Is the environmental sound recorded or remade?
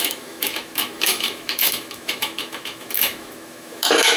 remade